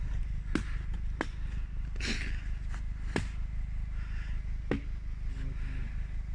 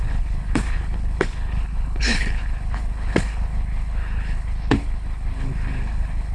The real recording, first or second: first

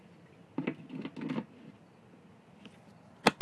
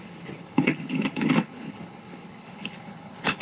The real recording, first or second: first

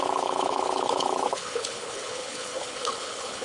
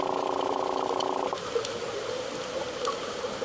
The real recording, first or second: second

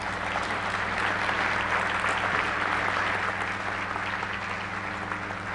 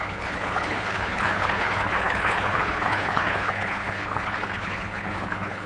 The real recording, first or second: first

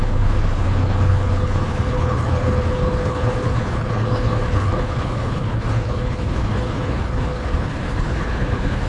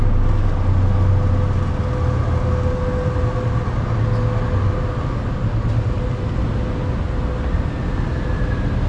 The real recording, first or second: second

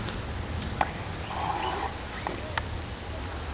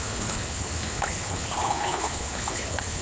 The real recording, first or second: first